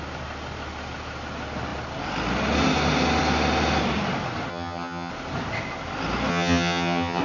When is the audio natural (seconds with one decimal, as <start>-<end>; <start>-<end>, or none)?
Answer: 0.0-4.5; 5.1-6.3